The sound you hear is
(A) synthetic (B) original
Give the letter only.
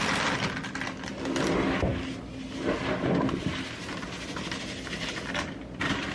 B